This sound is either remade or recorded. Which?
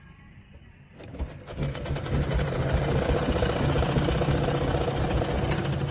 recorded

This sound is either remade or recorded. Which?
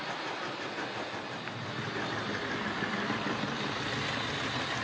recorded